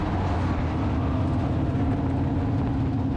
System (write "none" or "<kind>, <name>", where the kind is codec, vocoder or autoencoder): none